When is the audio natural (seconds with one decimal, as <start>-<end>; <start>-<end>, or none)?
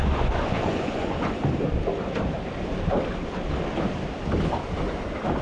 1.4-5.4